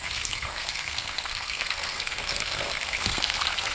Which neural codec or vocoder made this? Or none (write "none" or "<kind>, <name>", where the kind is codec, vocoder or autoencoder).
codec, SNAC